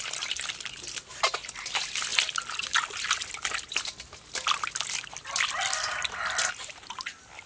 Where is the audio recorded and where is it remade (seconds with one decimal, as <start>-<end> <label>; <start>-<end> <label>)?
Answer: 0.0-7.5 recorded